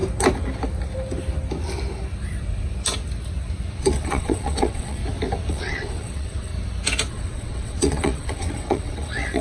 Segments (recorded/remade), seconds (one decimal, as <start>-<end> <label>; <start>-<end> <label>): 0.0-3.8 recorded; 3.8-5.0 remade; 5.0-5.5 recorded; 5.5-6.5 remade; 6.5-7.1 recorded; 7.1-9.4 remade